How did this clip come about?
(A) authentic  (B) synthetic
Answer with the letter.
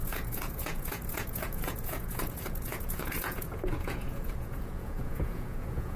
B